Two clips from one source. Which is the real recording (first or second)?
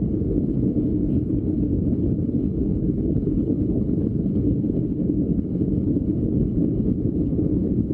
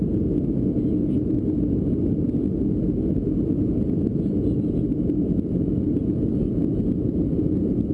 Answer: second